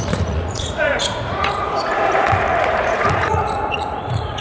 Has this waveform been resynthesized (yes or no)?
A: yes